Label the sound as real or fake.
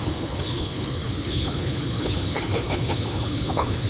fake